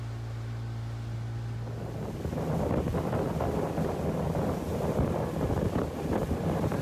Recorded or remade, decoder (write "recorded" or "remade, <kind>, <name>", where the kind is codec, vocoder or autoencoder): recorded